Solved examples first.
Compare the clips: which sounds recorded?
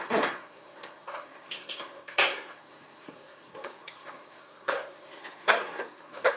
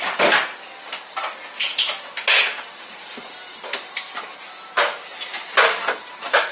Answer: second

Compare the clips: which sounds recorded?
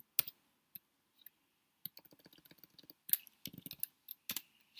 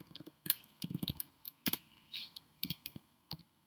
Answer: first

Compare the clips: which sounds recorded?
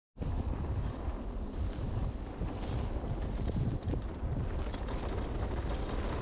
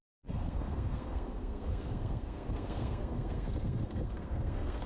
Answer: first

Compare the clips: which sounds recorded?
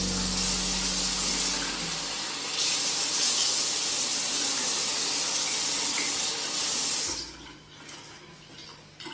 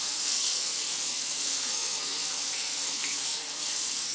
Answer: first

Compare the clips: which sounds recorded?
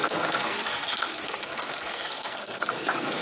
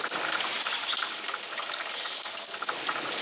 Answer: second